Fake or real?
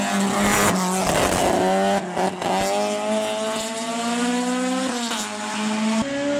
real